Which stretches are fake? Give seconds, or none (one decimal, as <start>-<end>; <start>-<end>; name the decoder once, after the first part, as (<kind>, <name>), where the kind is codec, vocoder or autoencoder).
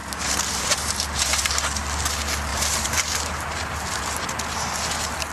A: 0.0-1.5 (vocoder, BigVGAN v2); 2.5-4.0